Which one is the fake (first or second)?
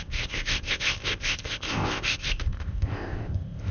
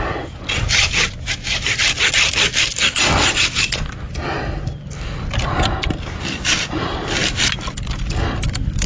first